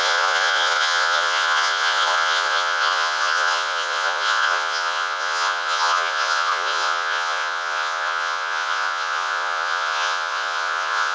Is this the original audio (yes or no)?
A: no